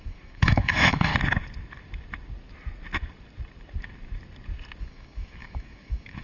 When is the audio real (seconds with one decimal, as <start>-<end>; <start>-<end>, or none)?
1.1-4.8

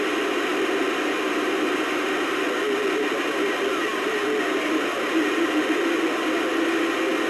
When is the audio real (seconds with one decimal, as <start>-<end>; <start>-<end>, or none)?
0.0-7.3

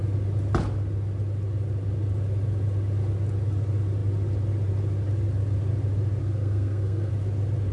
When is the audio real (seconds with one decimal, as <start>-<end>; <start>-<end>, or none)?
0.0-6.2; 7.1-7.7

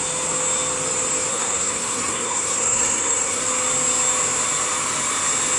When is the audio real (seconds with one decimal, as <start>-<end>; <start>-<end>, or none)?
0.0-1.3; 3.4-5.6